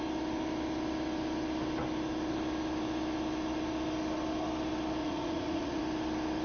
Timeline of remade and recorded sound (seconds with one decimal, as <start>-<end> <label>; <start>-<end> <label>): 0.0-5.0 recorded; 5.0-5.8 remade; 5.8-6.4 recorded

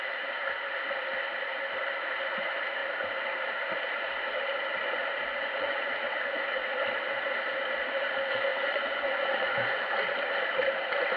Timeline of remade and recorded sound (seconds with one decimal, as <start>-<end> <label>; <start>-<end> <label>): 0.0-5.3 recorded; 5.3-5.9 remade; 5.9-8.5 recorded; 8.5-9.9 remade; 9.9-11.2 recorded

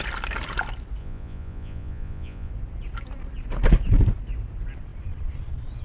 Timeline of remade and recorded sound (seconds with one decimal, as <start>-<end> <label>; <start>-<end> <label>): 0.0-1.0 recorded; 1.0-2.5 remade; 2.5-5.8 recorded

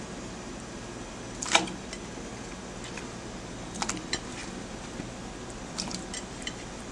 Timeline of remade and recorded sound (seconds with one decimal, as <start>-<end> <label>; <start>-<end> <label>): 0.0-6.9 recorded

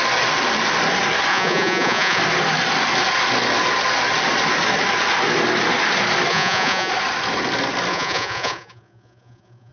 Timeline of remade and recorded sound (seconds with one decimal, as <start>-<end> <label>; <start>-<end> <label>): 0.0-1.3 recorded; 1.3-2.2 remade; 2.2-6.3 recorded; 6.3-6.9 remade; 6.9-7.9 recorded; 7.9-9.7 remade

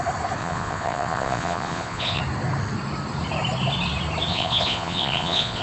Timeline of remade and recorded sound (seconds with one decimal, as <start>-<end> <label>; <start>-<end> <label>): 0.0-0.4 recorded; 0.4-2.2 remade; 2.2-4.3 recorded; 4.3-5.6 remade